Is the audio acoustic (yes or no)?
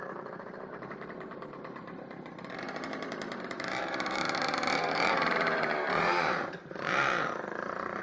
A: no